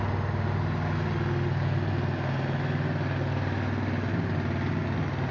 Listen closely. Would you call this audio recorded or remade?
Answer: recorded